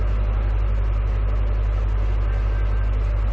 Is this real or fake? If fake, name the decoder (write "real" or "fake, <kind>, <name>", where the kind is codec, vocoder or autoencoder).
real